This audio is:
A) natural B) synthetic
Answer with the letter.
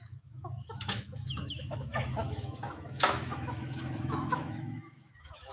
B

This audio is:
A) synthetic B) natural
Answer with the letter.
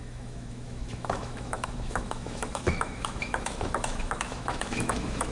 A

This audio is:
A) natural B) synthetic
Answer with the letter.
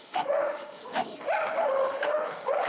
B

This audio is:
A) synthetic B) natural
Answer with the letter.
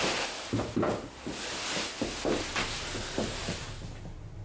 B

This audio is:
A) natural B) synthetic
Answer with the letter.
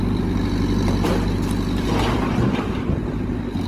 A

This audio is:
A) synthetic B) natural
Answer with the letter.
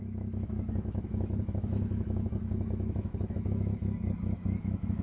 A